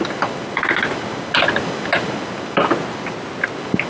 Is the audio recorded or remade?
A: recorded